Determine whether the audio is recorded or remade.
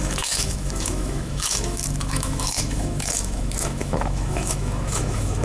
remade